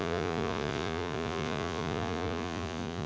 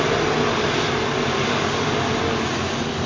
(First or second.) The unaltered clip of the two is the second